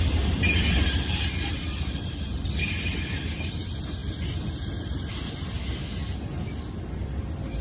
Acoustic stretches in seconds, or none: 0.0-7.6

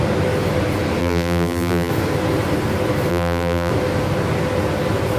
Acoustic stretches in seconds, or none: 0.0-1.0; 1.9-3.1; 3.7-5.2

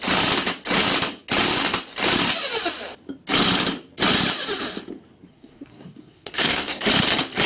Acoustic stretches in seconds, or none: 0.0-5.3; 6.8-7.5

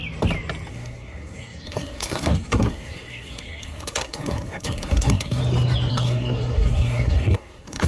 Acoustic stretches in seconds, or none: 0.0-0.7; 5.4-5.9

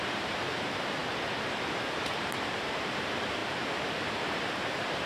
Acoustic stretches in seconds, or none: 1.0-1.6

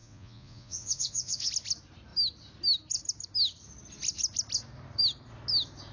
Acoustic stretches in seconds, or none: 1.5-5.9

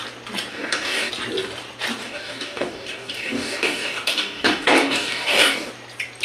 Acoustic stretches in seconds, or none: 0.0-0.5; 1.1-2.0; 5.7-6.2

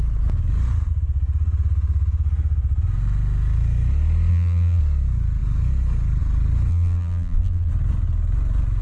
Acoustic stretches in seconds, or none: 0.0-4.3; 4.8-6.7; 7.7-8.8